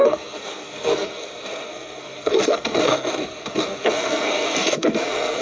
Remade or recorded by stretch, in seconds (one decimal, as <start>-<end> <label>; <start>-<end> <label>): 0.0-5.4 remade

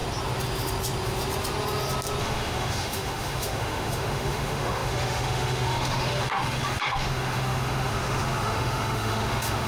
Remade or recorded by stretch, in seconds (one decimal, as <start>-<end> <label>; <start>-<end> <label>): 0.0-2.2 recorded; 2.2-9.7 remade

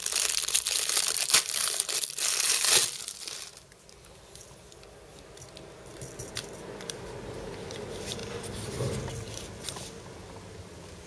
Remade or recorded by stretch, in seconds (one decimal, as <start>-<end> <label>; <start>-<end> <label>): 0.0-8.2 remade; 8.2-10.6 recorded; 10.6-11.1 remade